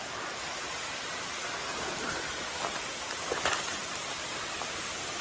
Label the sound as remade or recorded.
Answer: recorded